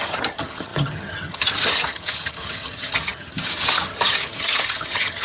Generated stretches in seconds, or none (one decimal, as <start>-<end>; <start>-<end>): 0.0-5.2